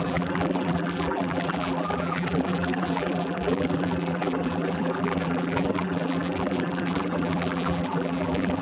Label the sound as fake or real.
fake